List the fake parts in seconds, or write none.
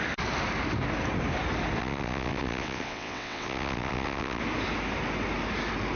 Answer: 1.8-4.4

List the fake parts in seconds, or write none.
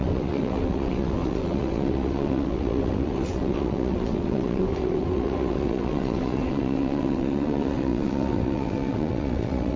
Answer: 0.0-9.8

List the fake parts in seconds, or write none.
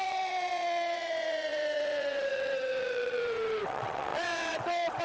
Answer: 0.0-5.0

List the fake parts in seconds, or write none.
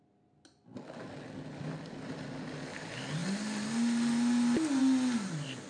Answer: none